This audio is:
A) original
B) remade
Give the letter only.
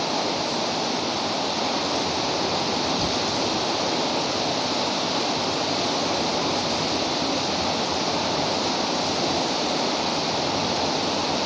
A